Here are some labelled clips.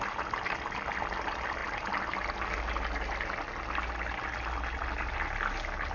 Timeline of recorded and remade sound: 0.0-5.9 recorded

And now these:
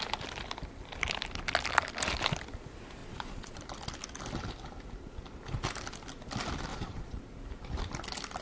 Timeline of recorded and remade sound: 0.0-3.0 recorded; 3.0-3.6 remade; 3.6-6.7 recorded; 6.7-7.2 remade; 7.2-8.4 recorded